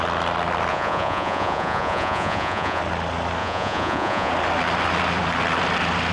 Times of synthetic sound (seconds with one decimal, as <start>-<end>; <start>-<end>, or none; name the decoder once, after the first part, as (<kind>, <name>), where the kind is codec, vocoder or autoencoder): 0.7-2.8 (vocoder, Vocos); 3.4-4.3